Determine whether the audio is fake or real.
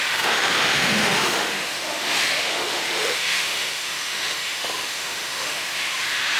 fake